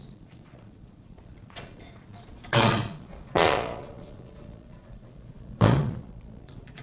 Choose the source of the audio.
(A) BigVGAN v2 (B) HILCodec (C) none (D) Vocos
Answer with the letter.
D